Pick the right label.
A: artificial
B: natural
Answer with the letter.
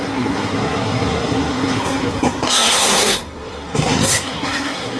A